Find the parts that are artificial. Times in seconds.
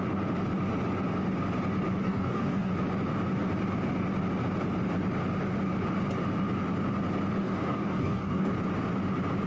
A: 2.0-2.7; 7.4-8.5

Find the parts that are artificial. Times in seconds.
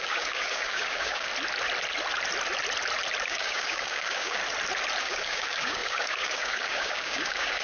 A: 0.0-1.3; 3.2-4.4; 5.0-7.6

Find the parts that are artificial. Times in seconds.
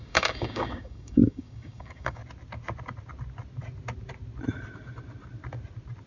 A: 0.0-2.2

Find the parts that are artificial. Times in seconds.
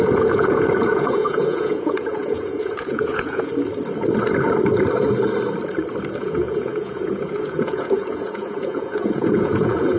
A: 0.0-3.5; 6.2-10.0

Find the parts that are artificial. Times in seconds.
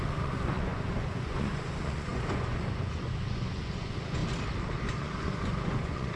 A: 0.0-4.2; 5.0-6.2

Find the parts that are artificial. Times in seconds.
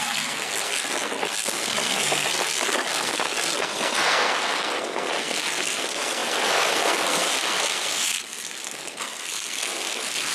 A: 0.0-10.3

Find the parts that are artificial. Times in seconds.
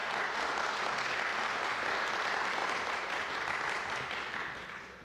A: 2.6-3.3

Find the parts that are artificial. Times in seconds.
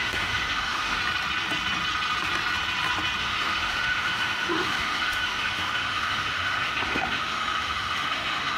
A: 0.0-1.0; 3.2-8.6